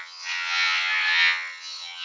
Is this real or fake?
fake